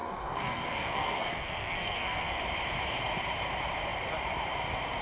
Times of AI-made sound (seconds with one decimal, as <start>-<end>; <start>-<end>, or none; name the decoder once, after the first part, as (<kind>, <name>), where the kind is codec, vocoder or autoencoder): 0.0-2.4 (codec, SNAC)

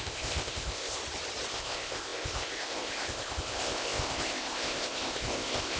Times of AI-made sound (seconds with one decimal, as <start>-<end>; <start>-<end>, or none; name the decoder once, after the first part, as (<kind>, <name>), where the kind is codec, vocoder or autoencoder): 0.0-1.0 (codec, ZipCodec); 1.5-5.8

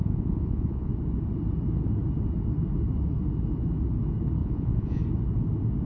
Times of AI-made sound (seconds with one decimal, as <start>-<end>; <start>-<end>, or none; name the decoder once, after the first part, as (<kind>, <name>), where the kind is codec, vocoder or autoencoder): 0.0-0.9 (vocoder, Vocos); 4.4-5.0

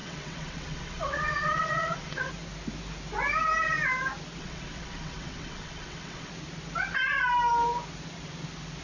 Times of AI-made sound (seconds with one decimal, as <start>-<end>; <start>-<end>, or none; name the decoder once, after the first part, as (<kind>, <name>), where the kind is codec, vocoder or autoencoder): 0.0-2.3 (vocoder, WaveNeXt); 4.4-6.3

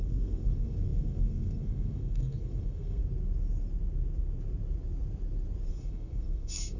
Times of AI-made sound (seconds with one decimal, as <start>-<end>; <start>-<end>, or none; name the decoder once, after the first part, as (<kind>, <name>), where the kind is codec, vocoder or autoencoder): 0.0-3.0 (codec, SNAC); 5.7-6.8

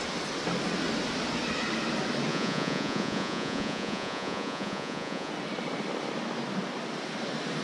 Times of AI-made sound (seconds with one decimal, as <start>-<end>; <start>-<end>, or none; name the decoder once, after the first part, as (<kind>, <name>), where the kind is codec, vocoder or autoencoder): 2.3-5.3 (vocoder, Vocos)

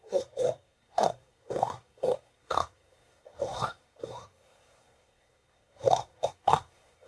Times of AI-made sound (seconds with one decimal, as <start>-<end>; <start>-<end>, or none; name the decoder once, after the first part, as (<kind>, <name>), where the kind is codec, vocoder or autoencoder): 0.0-7.1 (codec, SNAC)